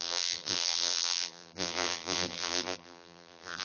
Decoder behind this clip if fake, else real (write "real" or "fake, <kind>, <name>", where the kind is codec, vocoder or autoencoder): fake, vocoder, BigVGAN v2